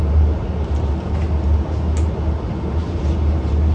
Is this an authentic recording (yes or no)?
yes